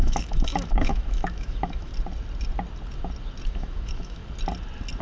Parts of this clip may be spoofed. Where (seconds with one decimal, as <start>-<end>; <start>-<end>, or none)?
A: 0.0-1.9; 3.5-4.2